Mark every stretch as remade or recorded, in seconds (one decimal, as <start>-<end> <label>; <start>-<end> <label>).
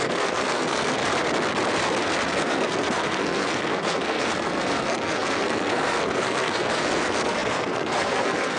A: 0.0-1.0 remade; 1.0-2.3 recorded; 2.3-8.6 remade